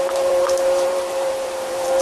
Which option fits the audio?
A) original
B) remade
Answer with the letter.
B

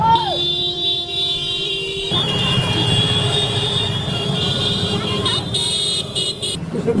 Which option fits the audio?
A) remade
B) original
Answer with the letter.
A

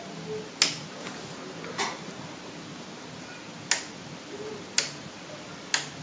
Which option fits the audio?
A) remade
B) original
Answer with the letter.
B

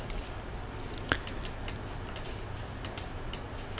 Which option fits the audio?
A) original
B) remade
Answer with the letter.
A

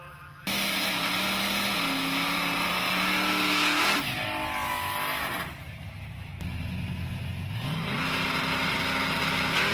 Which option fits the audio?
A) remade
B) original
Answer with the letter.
B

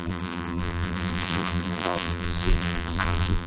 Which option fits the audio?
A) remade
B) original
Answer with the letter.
A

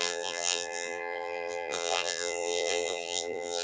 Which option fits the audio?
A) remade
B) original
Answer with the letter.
A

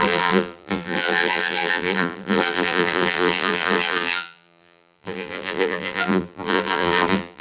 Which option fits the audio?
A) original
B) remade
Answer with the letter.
B